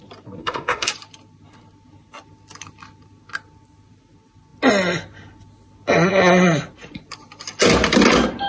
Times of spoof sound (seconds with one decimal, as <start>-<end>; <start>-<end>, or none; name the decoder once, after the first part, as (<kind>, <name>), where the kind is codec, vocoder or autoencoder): 0.4-0.9 (autoencoder, DAC-VAE)